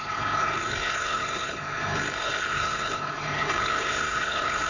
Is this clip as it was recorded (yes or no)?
no